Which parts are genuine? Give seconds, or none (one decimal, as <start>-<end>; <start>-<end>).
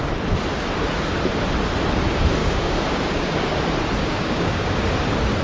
0.0-2.4; 3.6-4.0; 4.8-5.4